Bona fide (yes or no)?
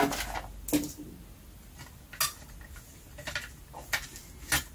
yes